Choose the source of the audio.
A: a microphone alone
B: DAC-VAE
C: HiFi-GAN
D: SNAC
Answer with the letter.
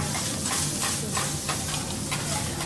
A